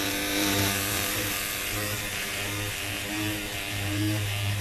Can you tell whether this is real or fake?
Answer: fake